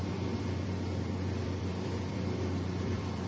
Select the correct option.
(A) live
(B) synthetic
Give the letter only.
B